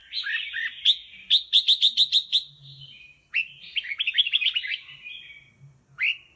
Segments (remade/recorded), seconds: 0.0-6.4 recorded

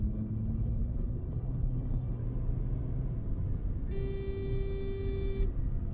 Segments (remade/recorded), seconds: 0.0-2.2 remade; 2.2-5.9 recorded

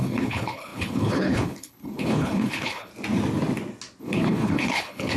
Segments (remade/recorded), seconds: 0.0-2.9 remade; 2.9-4.0 recorded; 4.0-5.2 remade